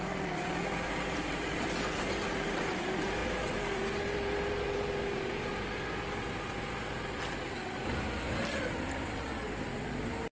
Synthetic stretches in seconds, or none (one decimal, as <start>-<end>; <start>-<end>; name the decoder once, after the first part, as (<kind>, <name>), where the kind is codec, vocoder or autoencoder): none